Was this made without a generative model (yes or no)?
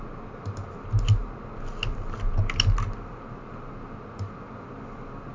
yes